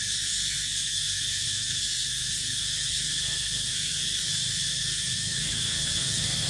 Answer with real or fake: fake